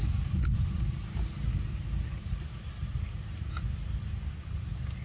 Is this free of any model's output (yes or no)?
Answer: yes